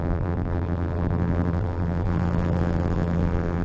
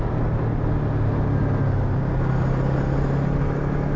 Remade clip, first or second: first